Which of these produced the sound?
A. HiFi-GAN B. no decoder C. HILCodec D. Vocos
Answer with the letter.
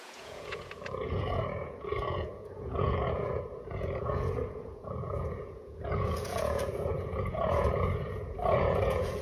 D